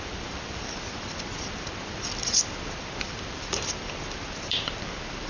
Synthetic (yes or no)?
yes